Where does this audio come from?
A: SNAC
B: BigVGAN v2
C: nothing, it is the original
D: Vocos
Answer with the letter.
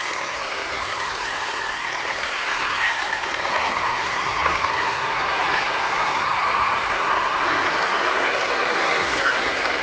A